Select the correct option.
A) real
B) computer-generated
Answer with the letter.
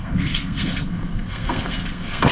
B